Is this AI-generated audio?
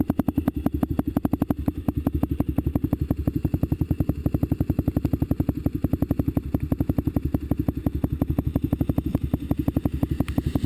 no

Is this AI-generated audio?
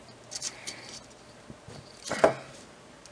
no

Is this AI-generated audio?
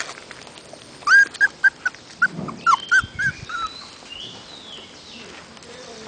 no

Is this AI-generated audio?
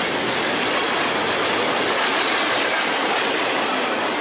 no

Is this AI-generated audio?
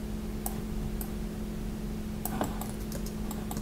no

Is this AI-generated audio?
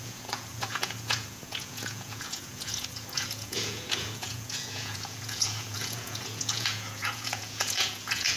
yes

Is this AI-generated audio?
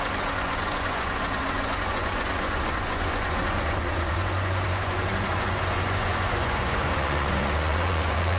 yes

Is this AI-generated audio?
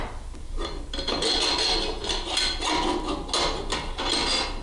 no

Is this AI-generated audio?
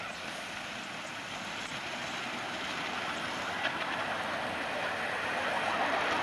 no